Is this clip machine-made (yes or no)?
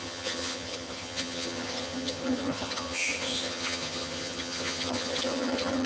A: yes